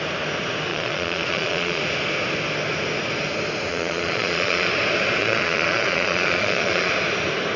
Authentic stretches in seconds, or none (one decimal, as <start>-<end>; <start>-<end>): 0.0-0.7; 1.8-3.7; 4.7-5.2; 6.9-7.6

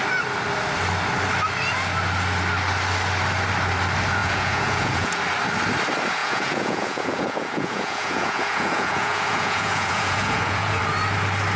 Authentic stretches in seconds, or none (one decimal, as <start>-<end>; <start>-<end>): 0.0-4.2; 5.2-6.2; 10.8-11.6

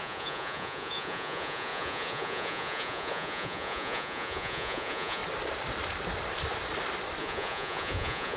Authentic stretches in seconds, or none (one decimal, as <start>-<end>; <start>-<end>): 5.2-7.2

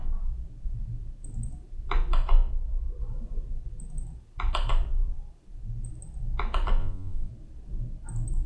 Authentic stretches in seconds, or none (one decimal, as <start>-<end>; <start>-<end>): 0.0-6.8; 7.3-8.5

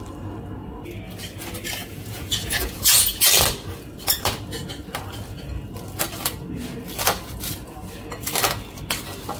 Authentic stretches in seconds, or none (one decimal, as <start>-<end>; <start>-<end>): 0.0-1.8; 3.2-9.4